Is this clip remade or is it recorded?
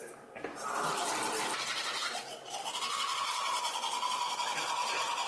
recorded